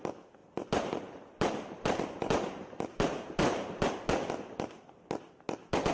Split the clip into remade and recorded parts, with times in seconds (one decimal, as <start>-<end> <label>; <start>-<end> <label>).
0.0-0.4 recorded; 0.4-3.9 remade; 3.9-5.9 recorded